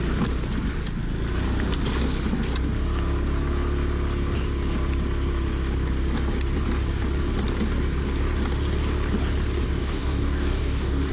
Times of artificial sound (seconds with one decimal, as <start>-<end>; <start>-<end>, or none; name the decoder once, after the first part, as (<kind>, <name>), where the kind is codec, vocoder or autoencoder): 9.8-11.1 (codec, DAC)